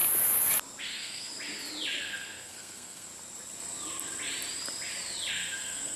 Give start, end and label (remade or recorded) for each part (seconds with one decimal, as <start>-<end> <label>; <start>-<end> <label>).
0.0-0.8 recorded; 0.8-1.3 remade; 1.3-2.0 recorded; 2.0-3.1 remade; 3.1-5.3 recorded; 5.3-6.0 remade